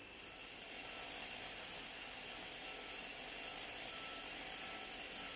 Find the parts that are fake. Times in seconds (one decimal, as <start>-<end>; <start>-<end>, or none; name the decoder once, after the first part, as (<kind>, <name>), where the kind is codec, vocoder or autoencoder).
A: none

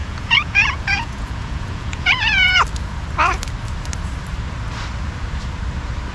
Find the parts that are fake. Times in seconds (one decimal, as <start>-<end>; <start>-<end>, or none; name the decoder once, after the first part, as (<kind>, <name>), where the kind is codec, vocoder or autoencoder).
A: 0.0-2.6 (vocoder, Vocos)

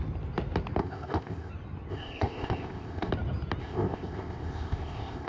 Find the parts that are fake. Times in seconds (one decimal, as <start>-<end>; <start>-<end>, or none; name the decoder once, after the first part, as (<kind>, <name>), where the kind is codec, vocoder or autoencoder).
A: 0.8-1.5 (codec, ZipCodec); 1.9-3.1; 3.6-5.3

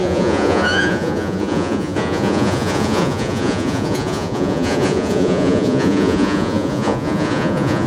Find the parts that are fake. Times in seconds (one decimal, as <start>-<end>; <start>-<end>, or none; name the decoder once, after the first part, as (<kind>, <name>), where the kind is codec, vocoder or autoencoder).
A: 0.0-7.9 (vocoder, Vocos)

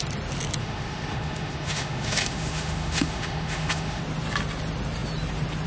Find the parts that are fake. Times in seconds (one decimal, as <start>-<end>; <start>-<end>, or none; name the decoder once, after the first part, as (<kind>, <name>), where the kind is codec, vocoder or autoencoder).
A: 0.6-4.0 (autoencoder, DAC-VAE)

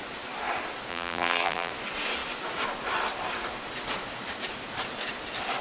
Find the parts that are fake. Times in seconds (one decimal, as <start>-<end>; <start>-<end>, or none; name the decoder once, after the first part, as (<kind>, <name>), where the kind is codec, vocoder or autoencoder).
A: 0.9-1.7 (vocoder, BigVGAN v2)